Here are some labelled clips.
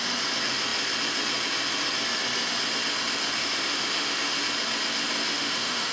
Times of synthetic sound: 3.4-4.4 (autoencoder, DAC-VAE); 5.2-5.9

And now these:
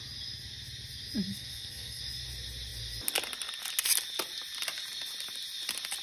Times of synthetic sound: 1.3-2.0 (codec, SNAC)

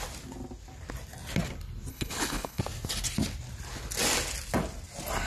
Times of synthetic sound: 1.9-2.6 (codec, HILCodec)

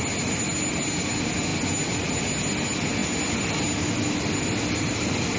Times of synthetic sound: none

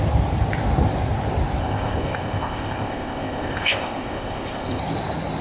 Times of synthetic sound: 1.6-4.8 (codec, ZipCodec)